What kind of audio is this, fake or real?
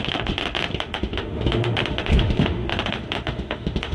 fake